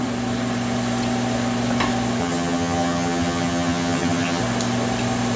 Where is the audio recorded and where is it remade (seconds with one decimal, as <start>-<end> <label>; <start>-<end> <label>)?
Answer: 0.0-2.2 recorded; 2.2-4.4 remade; 4.4-5.4 recorded

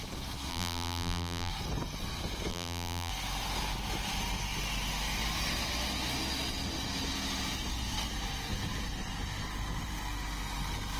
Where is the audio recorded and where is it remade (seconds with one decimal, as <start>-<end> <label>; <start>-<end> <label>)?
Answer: 0.0-0.5 recorded; 0.5-1.5 remade; 1.5-2.5 recorded; 2.5-3.1 remade; 3.1-11.0 recorded

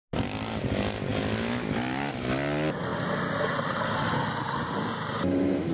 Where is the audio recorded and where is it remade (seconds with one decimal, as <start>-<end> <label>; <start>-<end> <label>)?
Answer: 0.0-5.7 recorded

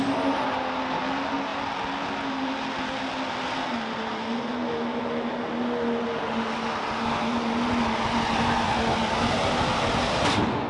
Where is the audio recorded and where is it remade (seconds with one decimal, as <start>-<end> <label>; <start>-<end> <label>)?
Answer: 0.0-10.7 recorded